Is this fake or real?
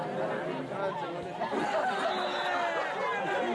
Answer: real